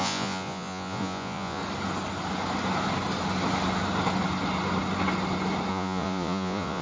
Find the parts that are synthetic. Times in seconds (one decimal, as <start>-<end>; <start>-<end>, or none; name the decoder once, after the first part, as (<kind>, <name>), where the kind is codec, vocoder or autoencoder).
0.0-1.6 (vocoder, Vocos); 5.7-6.8